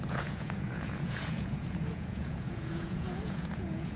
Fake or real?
fake